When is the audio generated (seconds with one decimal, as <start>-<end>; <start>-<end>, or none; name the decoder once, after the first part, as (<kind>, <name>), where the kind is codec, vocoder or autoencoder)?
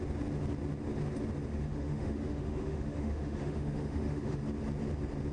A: 1.5-4.4 (autoencoder, DAC-VAE)